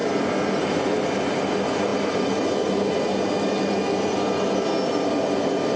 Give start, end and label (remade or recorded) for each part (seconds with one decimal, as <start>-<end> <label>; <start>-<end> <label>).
0.0-5.8 recorded

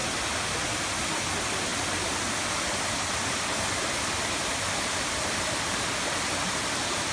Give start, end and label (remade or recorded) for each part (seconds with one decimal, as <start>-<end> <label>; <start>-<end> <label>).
0.0-7.1 recorded

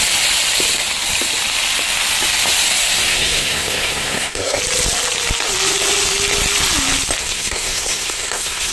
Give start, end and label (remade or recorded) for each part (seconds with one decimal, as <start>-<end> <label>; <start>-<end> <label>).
0.0-3.1 recorded; 3.1-4.6 remade; 4.6-7.2 recorded; 7.2-8.7 remade

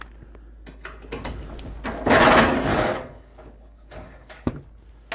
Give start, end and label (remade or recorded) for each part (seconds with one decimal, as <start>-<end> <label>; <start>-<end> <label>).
0.0-2.7 recorded; 2.7-4.5 remade; 4.5-5.1 recorded

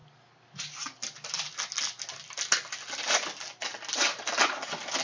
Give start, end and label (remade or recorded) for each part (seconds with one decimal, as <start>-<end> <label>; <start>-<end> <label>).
0.0-3.7 recorded; 3.7-4.4 remade; 4.4-5.0 recorded

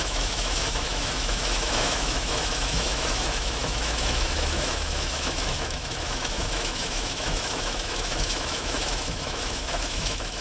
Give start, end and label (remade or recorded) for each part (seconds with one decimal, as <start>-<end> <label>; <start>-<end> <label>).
0.0-10.4 remade

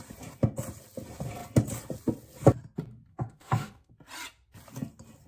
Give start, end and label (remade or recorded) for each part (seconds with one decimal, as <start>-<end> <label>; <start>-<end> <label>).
0.0-3.1 recorded; 3.1-3.9 remade; 3.9-5.3 recorded

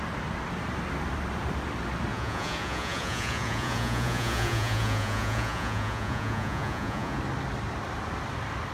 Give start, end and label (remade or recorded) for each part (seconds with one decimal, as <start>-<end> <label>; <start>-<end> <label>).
0.0-2.1 recorded; 2.1-7.2 remade; 7.2-8.7 recorded